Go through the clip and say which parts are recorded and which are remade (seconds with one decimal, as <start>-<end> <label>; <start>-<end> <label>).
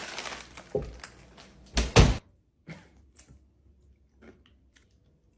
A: 0.0-5.4 recorded